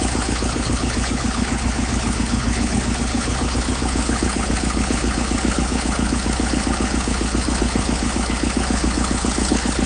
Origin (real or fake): fake